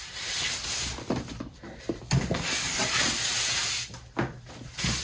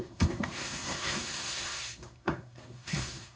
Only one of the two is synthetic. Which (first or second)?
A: second